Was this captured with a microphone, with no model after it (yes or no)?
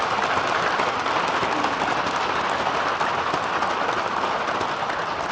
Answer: yes